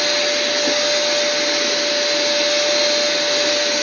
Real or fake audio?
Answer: real